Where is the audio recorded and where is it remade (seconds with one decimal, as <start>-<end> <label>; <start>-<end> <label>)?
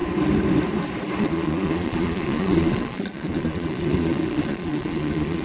0.0-1.2 recorded; 1.2-5.4 remade